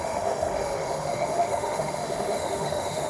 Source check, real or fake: fake